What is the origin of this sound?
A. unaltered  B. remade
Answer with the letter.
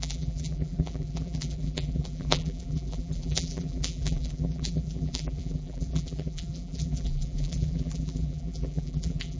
B